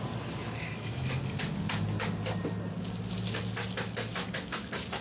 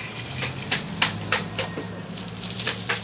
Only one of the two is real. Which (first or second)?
first